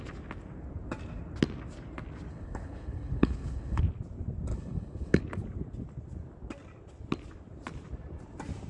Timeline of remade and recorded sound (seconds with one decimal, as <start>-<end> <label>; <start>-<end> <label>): 0.0-2.3 recorded; 2.3-3.8 remade; 3.8-4.5 recorded; 4.5-5.2 remade; 5.2-8.7 recorded

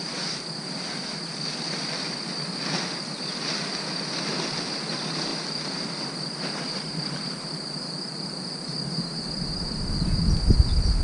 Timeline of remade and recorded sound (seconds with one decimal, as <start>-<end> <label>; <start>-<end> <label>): 0.0-11.0 recorded